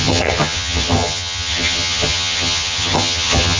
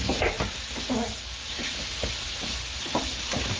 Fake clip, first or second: first